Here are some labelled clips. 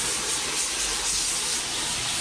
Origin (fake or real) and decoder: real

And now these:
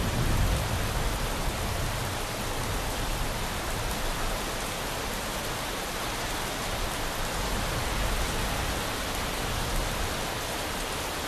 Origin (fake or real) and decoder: real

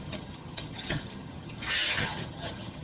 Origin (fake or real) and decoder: fake, vocoder, HiFi-GAN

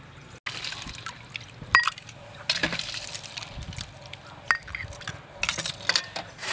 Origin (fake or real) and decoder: real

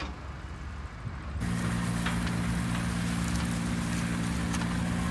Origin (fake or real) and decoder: real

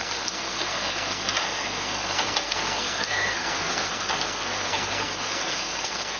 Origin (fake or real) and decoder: fake, codec, SNAC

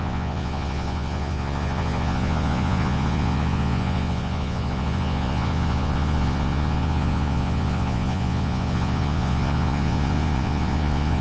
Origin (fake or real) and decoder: fake, vocoder, Vocos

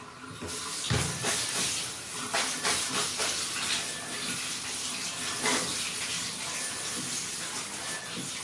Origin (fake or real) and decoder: real